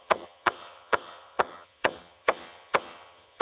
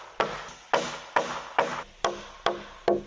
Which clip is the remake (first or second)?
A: first